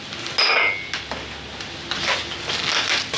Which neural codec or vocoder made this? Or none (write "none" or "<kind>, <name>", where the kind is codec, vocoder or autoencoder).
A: none